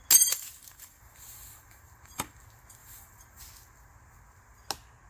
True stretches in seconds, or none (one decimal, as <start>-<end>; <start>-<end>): 0.0-0.6; 2.4-2.8; 3.4-5.1